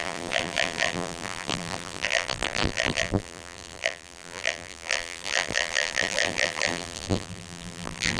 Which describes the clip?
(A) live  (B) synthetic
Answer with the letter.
B